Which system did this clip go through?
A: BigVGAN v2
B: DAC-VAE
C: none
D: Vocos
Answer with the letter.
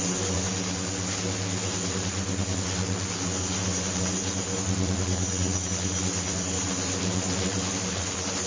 C